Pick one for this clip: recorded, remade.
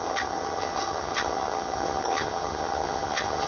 remade